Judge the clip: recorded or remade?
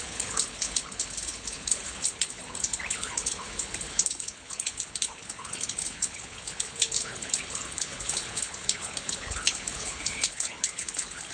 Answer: remade